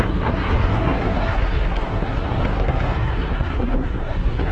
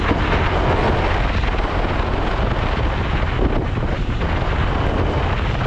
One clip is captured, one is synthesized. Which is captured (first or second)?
second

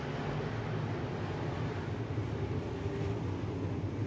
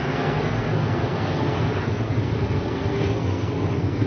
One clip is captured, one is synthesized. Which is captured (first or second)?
first